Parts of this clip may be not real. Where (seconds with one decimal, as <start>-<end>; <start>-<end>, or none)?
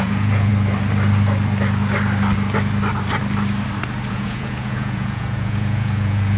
0.0-0.5; 4.1-6.4